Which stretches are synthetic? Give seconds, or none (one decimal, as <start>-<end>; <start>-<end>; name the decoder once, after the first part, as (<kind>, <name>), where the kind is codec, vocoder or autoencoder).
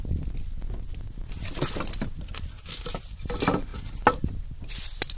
none